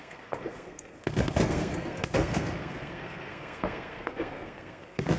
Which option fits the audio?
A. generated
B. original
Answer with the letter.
A